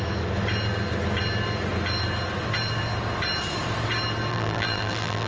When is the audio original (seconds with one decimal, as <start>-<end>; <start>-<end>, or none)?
0.0-4.3